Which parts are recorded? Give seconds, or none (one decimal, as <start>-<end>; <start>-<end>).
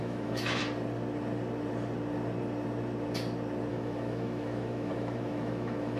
0.6-3.7